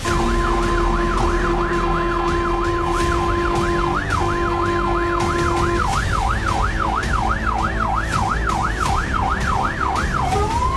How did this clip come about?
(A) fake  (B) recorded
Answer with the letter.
B